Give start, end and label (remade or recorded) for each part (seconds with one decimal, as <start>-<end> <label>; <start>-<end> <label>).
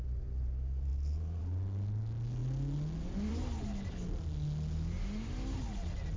0.0-6.2 recorded